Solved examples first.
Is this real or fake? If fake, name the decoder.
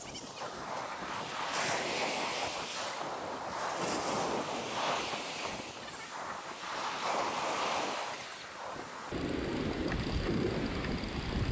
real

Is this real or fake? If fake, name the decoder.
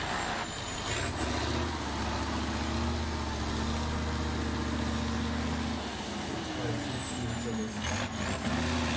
real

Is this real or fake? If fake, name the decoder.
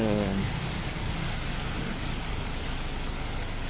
fake, codec, DAC